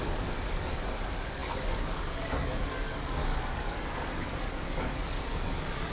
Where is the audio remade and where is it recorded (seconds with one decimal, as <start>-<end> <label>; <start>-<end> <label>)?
0.0-5.9 remade